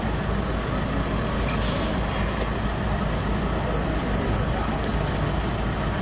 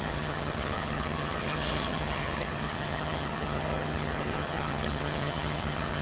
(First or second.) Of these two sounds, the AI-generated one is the second